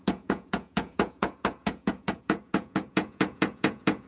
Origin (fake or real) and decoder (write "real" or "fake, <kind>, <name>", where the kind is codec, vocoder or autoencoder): fake, vocoder, Vocos